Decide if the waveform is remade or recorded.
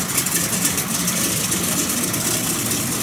recorded